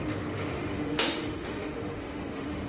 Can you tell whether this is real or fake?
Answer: fake